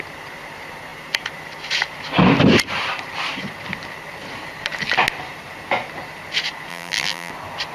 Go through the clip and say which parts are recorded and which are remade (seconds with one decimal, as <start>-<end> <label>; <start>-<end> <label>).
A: 0.0-6.7 recorded; 6.7-7.3 remade; 7.3-7.7 recorded

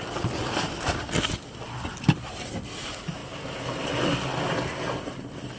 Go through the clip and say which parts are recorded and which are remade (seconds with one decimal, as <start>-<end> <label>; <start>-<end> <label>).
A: 0.0-5.6 recorded

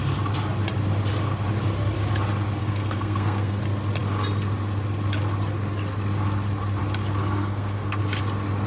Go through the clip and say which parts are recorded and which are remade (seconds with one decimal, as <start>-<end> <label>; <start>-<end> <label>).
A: 0.0-2.6 recorded; 2.6-3.6 remade; 3.6-7.2 recorded; 7.2-8.0 remade; 8.0-8.7 recorded

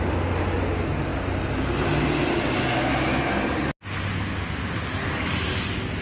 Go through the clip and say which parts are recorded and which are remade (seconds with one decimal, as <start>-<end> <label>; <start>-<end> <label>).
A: 0.0-6.0 recorded

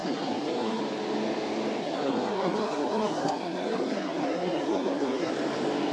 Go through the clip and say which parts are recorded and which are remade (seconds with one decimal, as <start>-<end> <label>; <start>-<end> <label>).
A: 0.0-0.8 remade; 0.8-1.8 recorded; 1.8-5.3 remade; 5.3-5.9 recorded

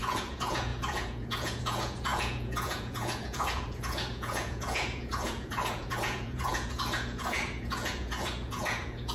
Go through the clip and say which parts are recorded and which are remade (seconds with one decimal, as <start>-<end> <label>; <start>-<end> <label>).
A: 0.0-9.1 remade